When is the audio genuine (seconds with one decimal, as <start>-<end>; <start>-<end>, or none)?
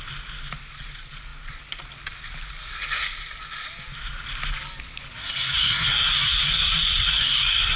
0.0-5.2